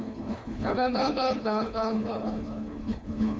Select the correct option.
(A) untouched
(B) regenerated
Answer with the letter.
B